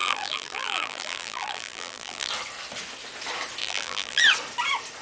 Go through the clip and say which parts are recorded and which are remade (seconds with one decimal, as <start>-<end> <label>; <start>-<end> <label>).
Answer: 0.0-2.3 remade; 2.3-3.6 recorded; 3.6-4.2 remade; 4.2-5.0 recorded